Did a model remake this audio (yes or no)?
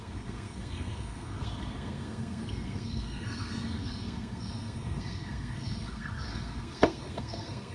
yes